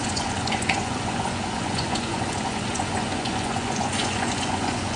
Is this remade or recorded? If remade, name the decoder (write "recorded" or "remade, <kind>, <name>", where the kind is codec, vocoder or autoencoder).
remade, vocoder, Vocos